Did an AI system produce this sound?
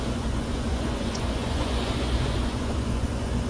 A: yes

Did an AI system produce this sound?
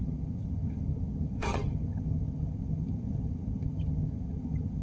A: yes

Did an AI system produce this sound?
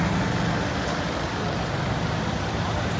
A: no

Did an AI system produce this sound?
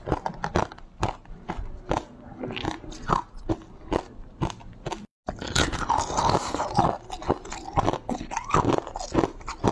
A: no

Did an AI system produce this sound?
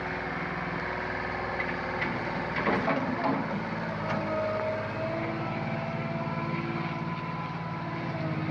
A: no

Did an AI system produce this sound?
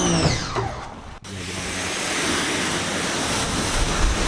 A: no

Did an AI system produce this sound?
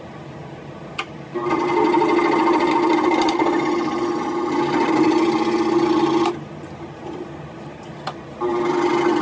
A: no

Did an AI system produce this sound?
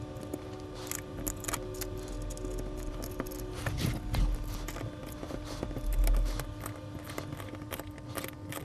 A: no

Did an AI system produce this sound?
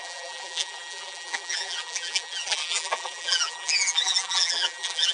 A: yes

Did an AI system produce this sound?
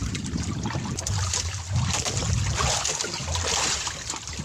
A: no